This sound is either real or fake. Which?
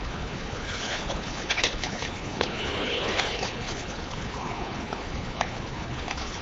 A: fake